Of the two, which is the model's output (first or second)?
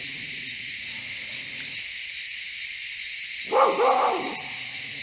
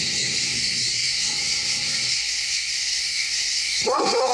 second